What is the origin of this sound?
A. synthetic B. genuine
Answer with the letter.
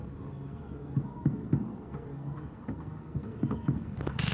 A